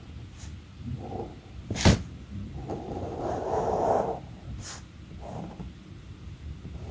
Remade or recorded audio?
recorded